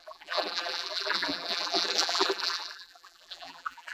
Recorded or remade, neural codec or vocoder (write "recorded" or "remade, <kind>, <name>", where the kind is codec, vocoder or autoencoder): remade, vocoder, BigVGAN v2